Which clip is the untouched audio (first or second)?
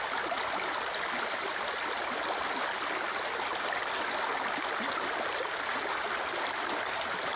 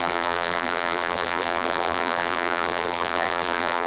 first